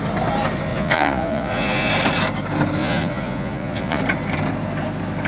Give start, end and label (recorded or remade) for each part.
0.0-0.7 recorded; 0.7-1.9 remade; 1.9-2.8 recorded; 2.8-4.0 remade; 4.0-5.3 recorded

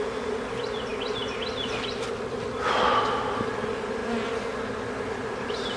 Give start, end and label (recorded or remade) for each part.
0.0-4.0 remade; 4.0-5.0 recorded; 5.0-5.8 remade

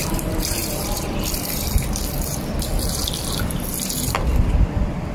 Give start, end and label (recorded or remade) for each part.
0.0-5.1 remade

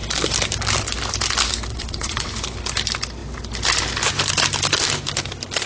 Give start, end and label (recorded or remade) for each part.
0.0-1.7 recorded; 1.7-2.3 remade; 2.3-5.7 recorded